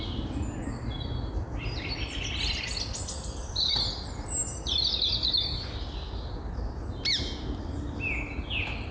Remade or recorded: recorded